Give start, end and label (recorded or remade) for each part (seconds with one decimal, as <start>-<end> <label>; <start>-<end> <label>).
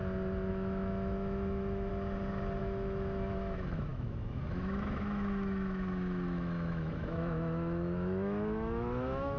0.0-0.5 recorded; 0.5-1.9 remade; 1.9-2.6 recorded; 2.6-9.4 remade